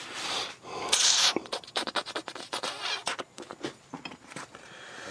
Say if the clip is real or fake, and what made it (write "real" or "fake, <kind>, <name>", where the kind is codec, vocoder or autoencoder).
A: fake, vocoder, BigVGAN v2